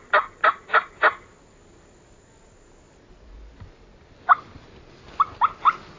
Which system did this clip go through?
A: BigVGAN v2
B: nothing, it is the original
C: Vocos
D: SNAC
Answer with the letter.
B